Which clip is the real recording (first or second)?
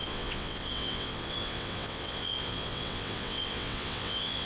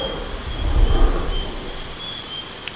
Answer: second